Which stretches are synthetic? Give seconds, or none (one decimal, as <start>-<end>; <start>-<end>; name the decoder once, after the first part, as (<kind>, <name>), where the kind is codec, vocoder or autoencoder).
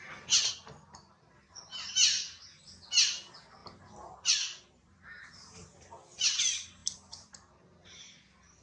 3.6-5.2 (vocoder, BigVGAN v2); 6.8-7.6